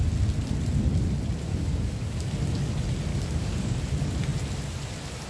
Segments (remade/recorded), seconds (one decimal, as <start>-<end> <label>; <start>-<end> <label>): 0.0-1.5 recorded; 1.5-2.3 remade; 2.3-3.1 recorded; 3.1-3.8 remade; 3.8-5.3 recorded